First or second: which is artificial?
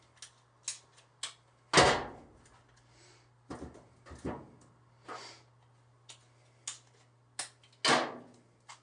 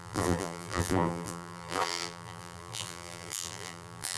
second